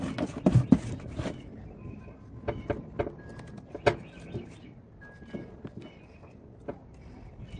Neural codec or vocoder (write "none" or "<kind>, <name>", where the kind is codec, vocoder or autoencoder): none